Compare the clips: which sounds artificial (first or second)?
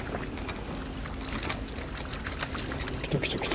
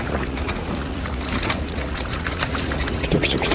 second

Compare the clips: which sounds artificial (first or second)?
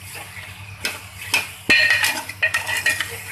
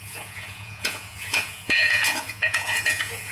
second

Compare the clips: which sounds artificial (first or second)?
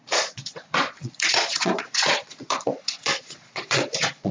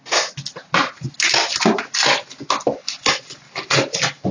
first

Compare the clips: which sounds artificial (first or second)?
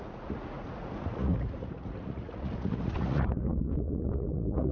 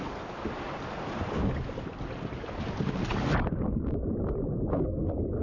first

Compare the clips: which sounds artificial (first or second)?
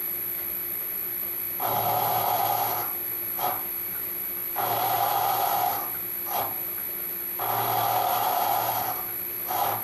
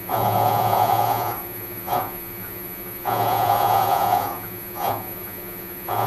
second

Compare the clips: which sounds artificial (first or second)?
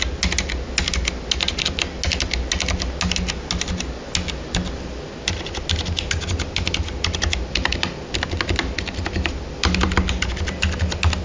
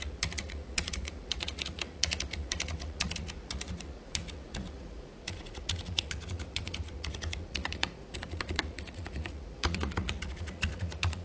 second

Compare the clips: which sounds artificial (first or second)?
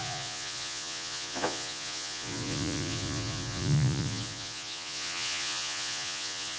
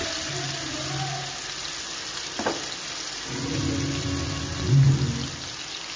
first